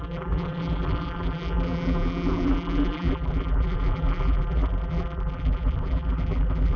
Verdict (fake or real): fake